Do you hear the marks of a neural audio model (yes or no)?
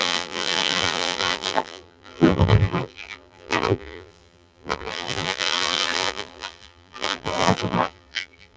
yes